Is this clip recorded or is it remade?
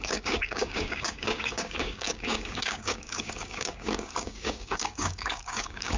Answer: remade